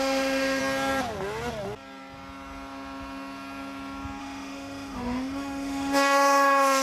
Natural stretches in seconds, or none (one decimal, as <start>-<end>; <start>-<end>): 0.6-4.2